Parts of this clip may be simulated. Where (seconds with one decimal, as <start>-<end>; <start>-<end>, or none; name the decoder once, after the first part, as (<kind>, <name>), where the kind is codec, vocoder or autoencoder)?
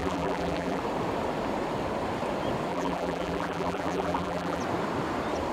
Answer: 0.0-0.8 (vocoder, BigVGAN v2); 2.7-4.6